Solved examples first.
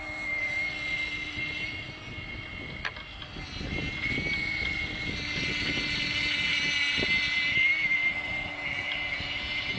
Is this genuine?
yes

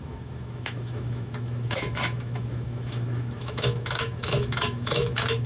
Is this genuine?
no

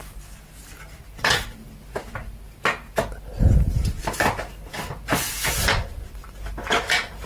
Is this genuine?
yes